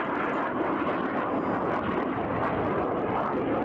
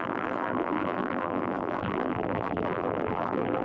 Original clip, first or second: first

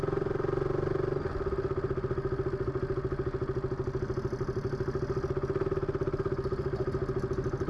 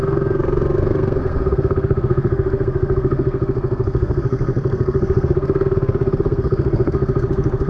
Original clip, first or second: first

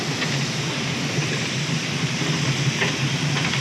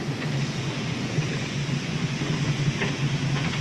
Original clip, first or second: first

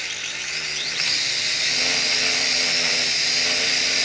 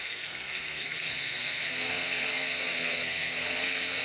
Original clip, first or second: first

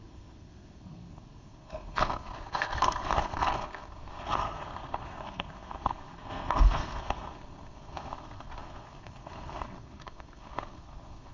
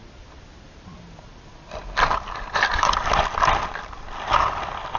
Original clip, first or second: second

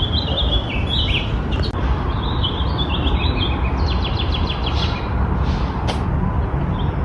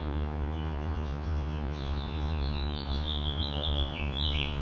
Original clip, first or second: first